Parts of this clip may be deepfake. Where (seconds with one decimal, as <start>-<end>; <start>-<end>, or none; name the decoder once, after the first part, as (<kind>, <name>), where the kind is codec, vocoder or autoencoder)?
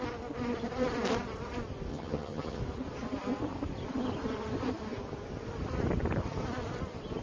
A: 1.9-2.6 (vocoder, HiFi-GAN)